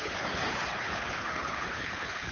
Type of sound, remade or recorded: remade